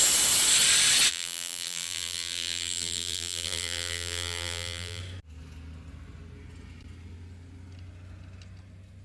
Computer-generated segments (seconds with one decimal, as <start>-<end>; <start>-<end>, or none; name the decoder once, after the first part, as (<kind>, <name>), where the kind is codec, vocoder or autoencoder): 1.1-5.0 (vocoder, BigVGAN v2)